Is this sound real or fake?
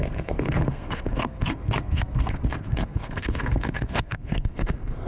fake